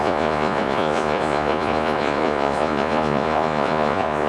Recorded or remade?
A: remade